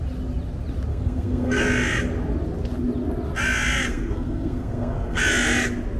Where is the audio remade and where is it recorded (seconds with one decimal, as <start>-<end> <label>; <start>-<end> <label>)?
0.0-0.9 recorded; 0.9-1.6 remade; 1.6-3.9 recorded; 3.9-5.2 remade; 5.2-6.0 recorded

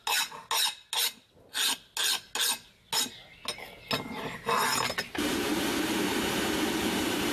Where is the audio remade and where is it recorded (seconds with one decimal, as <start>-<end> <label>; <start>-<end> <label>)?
0.0-7.3 recorded

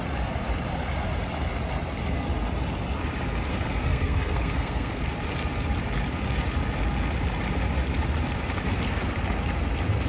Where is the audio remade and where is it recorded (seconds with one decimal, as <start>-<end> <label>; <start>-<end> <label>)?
0.0-3.5 recorded; 3.5-5.0 remade; 5.0-10.1 recorded